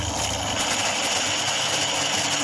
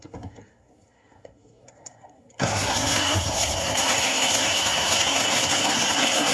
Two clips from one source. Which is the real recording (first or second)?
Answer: first